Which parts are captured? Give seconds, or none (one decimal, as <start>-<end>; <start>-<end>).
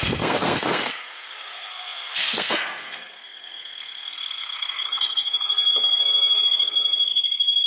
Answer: none